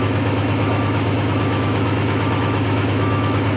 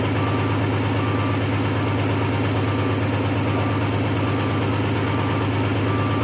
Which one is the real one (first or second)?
second